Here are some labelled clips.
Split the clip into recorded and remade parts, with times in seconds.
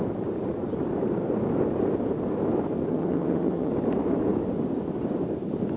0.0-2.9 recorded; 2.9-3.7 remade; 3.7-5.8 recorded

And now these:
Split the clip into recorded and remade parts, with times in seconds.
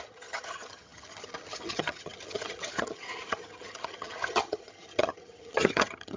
0.0-6.2 remade